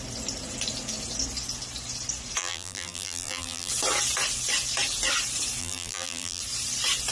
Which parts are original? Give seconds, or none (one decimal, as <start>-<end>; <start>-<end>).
0.0-2.4; 3.7-5.6; 6.4-7.1